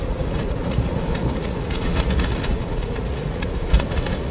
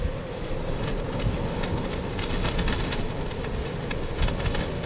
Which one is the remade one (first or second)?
first